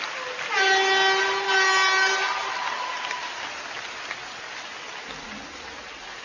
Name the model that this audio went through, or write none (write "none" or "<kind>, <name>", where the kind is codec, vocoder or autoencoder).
none